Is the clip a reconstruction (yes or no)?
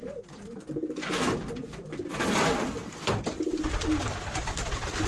no